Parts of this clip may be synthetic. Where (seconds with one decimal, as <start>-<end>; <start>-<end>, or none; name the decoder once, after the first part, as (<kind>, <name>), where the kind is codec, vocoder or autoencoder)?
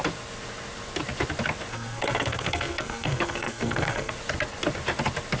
1.7-4.1 (codec, SNAC)